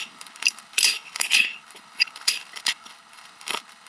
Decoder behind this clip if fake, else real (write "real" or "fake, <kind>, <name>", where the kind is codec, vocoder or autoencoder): fake, codec, HILCodec